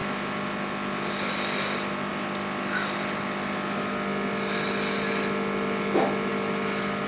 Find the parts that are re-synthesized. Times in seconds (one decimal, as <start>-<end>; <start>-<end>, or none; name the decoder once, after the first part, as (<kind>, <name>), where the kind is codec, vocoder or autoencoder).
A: none